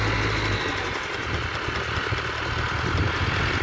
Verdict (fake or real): real